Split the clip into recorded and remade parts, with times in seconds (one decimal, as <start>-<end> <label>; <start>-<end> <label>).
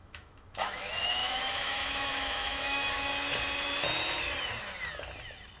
0.0-3.1 remade; 3.1-5.6 recorded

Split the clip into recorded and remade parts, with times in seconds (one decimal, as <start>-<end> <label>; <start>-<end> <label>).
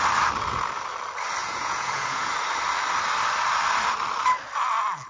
0.0-1.4 recorded; 1.4-2.3 remade; 2.3-5.1 recorded